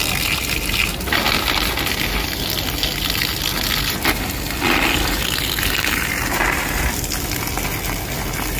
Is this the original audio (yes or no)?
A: yes